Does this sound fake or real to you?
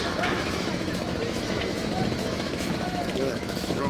fake